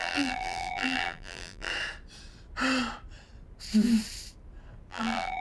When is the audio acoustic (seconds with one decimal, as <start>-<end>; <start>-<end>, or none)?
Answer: 1.7-4.9

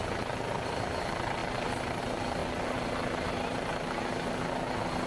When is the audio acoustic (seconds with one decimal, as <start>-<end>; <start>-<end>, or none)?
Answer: 0.0-5.1

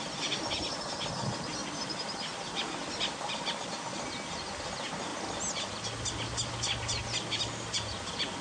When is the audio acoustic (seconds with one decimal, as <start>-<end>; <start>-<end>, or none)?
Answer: 0.0-8.4

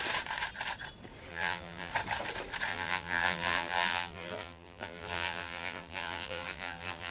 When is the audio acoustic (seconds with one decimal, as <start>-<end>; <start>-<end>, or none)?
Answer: 0.0-1.3; 1.9-2.7

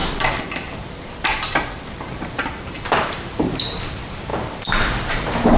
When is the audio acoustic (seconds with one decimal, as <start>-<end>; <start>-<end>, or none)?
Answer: none

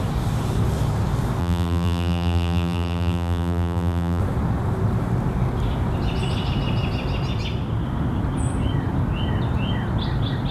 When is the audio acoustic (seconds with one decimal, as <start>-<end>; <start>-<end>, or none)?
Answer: 0.0-1.4; 4.2-10.5